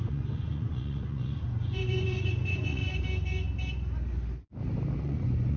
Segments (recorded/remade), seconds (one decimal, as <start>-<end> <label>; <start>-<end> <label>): 0.0-2.8 remade; 2.8-5.0 recorded; 5.0-5.6 remade